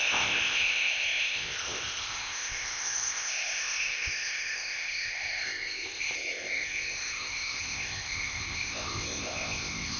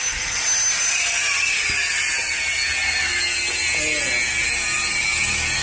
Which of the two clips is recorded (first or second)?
second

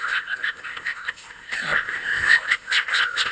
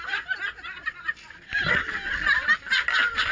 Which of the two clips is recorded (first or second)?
second